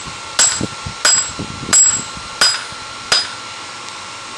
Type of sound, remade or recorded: recorded